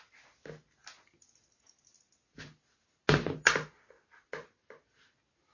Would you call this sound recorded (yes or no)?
yes